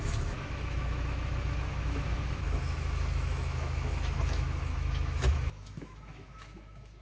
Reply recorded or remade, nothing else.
remade